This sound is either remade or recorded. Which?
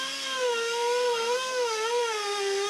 remade